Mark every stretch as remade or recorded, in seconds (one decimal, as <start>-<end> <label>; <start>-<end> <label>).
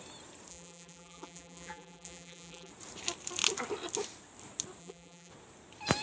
0.0-0.5 recorded; 0.5-2.7 remade; 2.7-4.8 recorded; 4.8-5.3 remade; 5.3-6.0 recorded